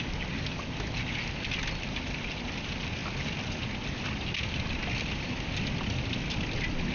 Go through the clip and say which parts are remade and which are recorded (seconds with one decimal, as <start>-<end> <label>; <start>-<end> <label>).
0.0-6.9 recorded